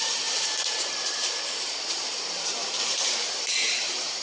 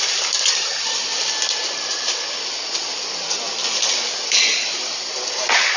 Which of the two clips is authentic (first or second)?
second